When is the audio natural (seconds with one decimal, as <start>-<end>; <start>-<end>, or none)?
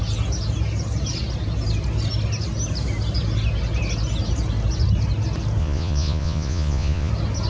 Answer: 0.0-5.6; 7.1-7.5